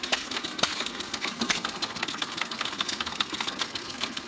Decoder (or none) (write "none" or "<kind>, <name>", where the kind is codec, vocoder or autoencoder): codec, SNAC